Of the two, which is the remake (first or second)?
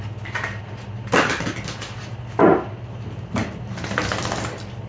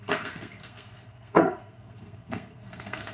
second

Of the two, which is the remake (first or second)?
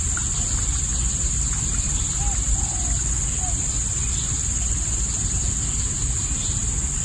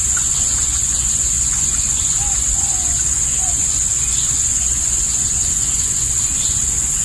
second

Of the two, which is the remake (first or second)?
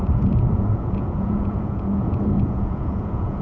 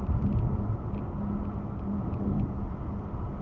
first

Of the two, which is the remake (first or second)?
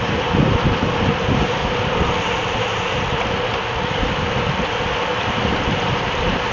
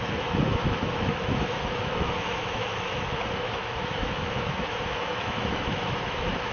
second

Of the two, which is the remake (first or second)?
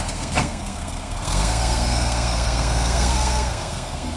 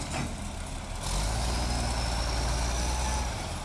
first